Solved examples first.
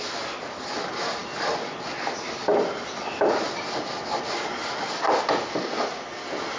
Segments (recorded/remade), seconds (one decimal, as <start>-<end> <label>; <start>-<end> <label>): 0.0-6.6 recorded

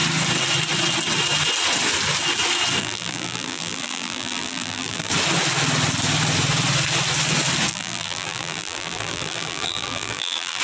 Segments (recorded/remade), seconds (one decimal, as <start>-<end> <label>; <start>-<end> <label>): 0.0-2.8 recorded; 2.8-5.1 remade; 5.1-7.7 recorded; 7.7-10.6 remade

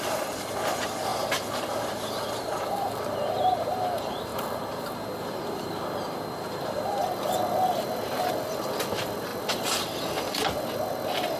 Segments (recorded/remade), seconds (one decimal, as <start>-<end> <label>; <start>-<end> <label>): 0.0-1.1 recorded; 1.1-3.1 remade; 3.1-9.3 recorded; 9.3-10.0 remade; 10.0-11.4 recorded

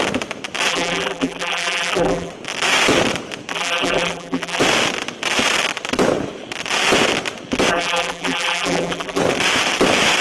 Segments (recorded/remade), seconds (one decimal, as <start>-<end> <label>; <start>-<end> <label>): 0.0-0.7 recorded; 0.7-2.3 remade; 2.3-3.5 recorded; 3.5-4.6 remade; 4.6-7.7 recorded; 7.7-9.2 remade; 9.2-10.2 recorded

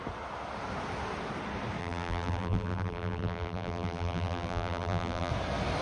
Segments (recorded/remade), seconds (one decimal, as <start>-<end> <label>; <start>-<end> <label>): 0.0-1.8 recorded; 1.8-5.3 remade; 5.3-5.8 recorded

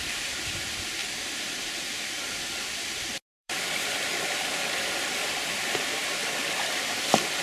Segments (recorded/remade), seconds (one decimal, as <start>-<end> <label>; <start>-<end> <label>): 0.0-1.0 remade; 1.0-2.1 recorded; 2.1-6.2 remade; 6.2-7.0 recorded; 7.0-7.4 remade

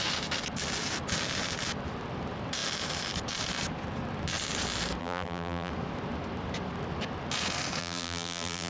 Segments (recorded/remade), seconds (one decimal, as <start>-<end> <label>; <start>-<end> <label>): 0.0-5.0 recorded; 5.0-5.7 remade; 5.7-7.8 recorded; 7.8-8.7 remade